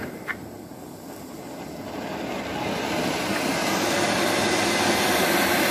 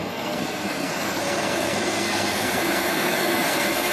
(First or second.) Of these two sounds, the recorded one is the first